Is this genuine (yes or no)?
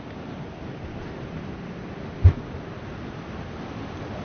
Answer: yes